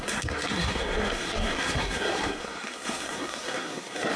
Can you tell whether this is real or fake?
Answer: fake